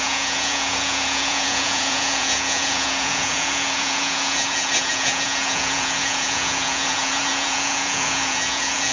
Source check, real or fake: fake